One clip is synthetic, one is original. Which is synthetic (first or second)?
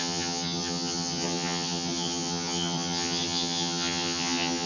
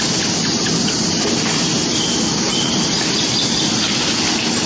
first